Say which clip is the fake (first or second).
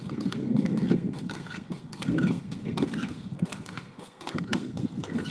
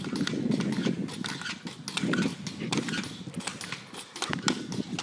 first